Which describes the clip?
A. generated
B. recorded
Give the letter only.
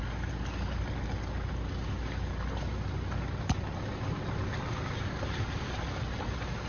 B